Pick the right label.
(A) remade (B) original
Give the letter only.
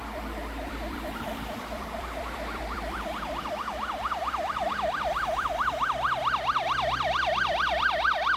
A